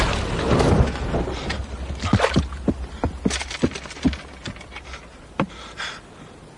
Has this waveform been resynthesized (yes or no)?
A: no